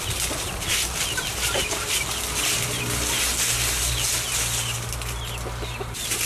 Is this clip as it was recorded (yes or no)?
yes